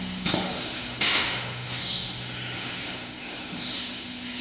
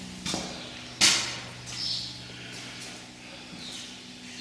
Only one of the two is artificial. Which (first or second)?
first